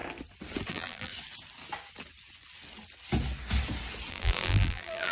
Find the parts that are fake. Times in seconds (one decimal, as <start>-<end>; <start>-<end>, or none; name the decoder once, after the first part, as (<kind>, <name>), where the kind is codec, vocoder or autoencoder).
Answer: 0.7-1.1 (vocoder, BigVGAN v2); 4.1-5.1